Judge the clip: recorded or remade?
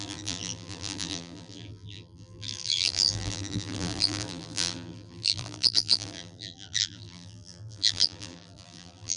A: remade